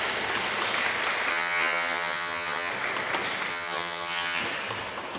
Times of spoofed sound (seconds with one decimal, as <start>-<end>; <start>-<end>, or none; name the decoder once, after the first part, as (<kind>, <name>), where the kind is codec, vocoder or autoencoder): 1.3-2.7 (vocoder, HiFi-GAN); 3.5-4.4